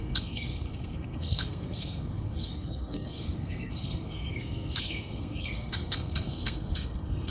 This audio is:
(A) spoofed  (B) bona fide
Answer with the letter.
A